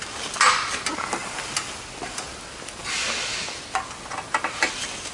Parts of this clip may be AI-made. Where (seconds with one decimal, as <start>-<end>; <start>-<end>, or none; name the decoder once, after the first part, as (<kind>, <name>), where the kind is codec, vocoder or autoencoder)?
none